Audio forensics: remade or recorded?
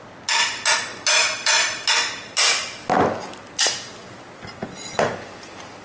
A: recorded